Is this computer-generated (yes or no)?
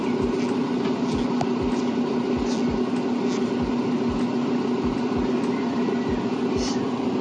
no